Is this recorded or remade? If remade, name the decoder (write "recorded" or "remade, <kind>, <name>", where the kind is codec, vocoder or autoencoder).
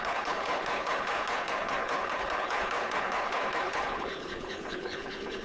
remade, codec, HILCodec